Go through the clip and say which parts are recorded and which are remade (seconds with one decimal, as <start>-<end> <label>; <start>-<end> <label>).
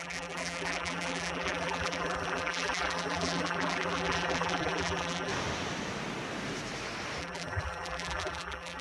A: 0.0-5.3 remade; 5.3-7.2 recorded; 7.2-8.8 remade